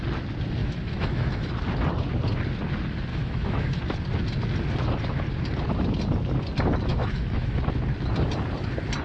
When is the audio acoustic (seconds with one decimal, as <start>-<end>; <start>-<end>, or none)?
0.0-0.6; 1.5-3.1; 3.8-6.9; 7.6-9.0